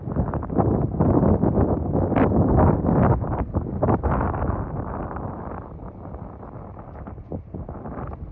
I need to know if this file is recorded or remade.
recorded